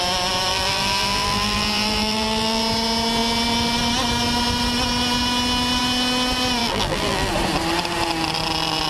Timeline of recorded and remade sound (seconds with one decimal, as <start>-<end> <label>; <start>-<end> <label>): 0.0-0.5 recorded; 0.5-2.6 remade; 2.6-6.6 recorded; 6.6-7.3 remade; 7.3-8.9 recorded